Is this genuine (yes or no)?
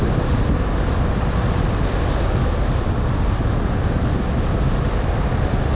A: yes